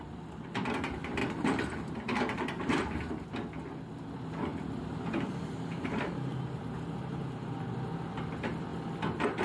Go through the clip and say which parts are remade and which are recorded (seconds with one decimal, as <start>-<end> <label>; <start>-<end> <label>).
0.0-1.2 recorded; 1.2-3.3 remade; 3.3-4.5 recorded; 4.5-7.7 remade; 7.7-9.4 recorded

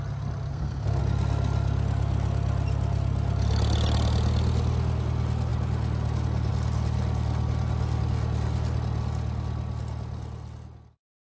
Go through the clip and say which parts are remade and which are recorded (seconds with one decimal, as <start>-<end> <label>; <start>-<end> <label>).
0.0-0.5 recorded; 0.5-1.0 remade; 1.0-11.2 recorded

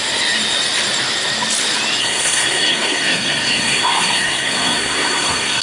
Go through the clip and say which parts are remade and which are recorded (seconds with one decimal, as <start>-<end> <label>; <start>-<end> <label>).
0.0-2.0 recorded; 2.0-5.6 remade

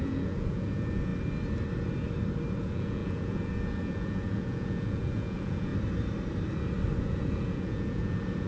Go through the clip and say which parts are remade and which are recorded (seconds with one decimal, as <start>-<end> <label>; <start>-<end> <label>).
0.0-1.1 remade; 1.1-2.6 recorded; 2.6-5.7 remade; 5.7-7.0 recorded; 7.0-8.5 remade

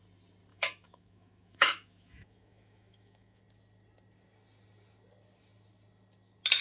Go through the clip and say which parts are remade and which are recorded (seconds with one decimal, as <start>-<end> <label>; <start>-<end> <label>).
0.0-0.5 recorded; 0.5-3.4 remade; 3.4-6.6 recorded